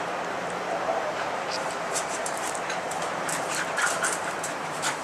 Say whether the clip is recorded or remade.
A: remade